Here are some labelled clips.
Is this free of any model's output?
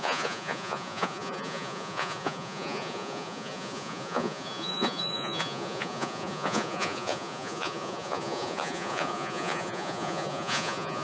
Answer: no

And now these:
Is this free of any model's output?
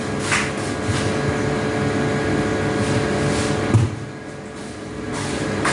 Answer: yes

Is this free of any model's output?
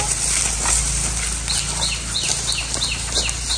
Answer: yes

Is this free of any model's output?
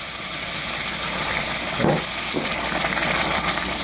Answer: yes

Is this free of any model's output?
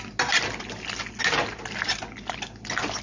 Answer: yes